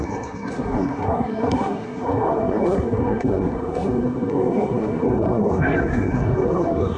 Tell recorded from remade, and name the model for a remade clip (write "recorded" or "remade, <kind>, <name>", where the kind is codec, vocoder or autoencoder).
remade, codec, SNAC